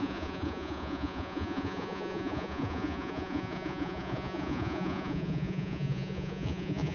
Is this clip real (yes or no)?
no